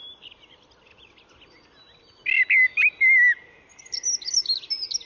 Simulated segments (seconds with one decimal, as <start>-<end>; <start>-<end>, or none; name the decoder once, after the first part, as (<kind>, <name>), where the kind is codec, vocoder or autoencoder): none